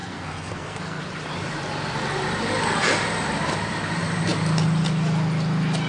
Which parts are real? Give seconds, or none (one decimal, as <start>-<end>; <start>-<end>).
1.0-5.9